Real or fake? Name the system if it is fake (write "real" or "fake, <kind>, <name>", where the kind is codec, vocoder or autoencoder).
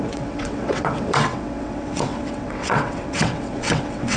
fake, vocoder, WaveNeXt